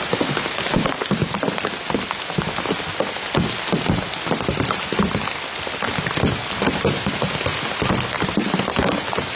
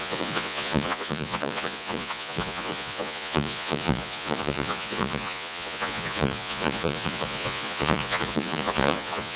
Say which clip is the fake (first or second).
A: second